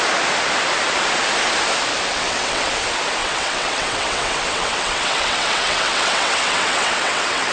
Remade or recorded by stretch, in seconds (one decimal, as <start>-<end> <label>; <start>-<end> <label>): 0.0-2.1 recorded; 2.1-2.7 remade; 2.7-3.2 recorded; 3.2-7.5 remade